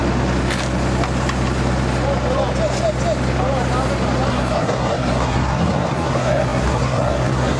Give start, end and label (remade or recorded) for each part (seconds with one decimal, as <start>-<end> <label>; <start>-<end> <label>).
0.0-4.3 recorded; 4.3-7.6 remade